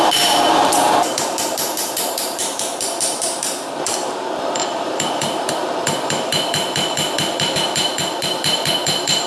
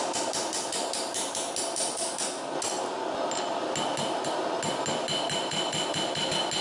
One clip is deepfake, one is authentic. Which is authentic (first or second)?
second